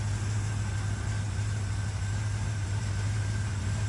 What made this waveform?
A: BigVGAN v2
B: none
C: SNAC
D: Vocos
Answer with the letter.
B